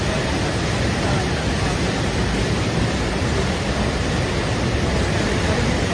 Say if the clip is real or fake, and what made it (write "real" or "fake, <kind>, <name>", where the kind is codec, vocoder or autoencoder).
real